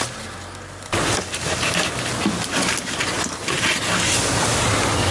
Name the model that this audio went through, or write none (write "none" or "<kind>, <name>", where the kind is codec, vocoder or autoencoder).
none